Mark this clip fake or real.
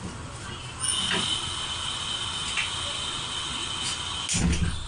real